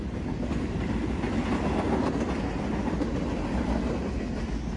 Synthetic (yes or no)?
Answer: no